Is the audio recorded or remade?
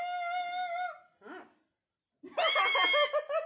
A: recorded